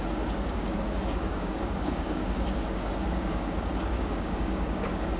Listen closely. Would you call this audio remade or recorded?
remade